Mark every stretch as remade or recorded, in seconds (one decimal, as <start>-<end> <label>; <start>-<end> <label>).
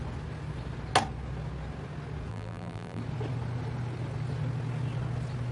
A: 0.0-2.3 recorded; 2.3-3.0 remade; 3.0-5.5 recorded